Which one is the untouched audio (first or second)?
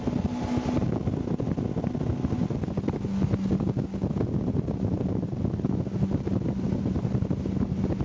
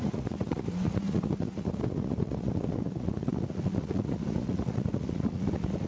first